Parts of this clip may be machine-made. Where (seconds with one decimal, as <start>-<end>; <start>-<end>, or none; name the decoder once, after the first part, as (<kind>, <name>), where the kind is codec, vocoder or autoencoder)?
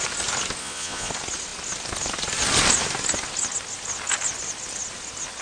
0.6-1.1 (vocoder, Vocos)